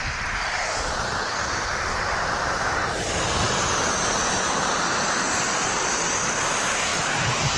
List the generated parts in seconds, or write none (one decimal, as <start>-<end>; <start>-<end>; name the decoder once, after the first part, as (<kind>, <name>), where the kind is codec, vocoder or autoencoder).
0.0-2.8 (vocoder, BigVGAN v2); 3.9-7.6